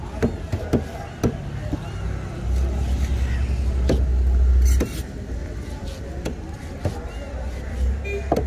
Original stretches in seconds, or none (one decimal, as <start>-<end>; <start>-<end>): 0.0-8.5